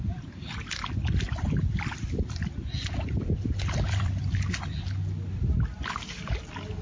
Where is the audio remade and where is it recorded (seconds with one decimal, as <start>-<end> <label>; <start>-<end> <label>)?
0.0-0.8 recorded; 0.8-4.6 remade; 4.6-6.8 recorded